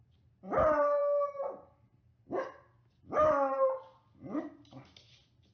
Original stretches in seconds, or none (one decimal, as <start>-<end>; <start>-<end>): 0.0-5.5